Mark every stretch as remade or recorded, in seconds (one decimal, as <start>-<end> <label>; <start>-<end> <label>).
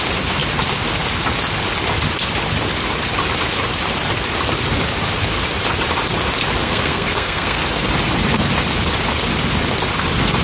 0.0-6.6 recorded; 6.6-7.6 remade; 7.6-10.4 recorded